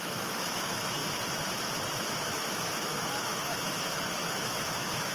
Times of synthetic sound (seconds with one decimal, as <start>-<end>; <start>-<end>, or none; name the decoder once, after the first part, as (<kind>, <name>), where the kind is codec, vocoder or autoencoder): 0.0-1.0 (autoencoder, DAC-VAE); 2.0-5.1